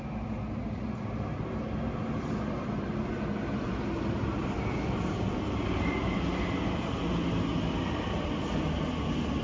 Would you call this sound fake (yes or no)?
no